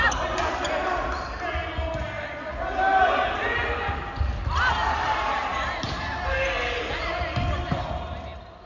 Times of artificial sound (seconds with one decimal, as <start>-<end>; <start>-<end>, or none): none